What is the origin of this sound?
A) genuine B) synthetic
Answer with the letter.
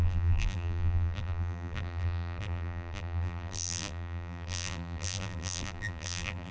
B